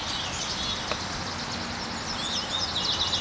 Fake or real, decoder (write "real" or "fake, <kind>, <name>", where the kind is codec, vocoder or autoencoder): real